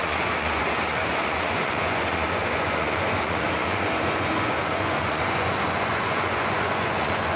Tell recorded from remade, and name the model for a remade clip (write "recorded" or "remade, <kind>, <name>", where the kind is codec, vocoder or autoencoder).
remade, vocoder, Vocos